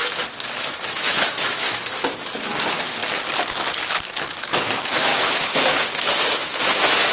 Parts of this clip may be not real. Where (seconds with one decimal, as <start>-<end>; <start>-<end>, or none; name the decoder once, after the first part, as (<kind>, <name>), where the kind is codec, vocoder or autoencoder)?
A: 0.6-3.0 (autoencoder, DAC-VAE); 4.3-7.1